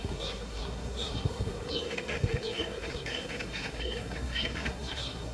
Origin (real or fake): fake